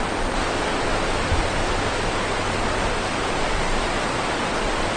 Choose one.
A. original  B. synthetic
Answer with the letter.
A